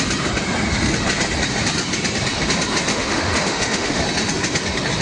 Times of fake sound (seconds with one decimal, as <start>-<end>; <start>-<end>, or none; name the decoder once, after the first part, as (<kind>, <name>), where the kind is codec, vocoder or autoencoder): 2.9-4.0 (autoencoder, DAC-VAE)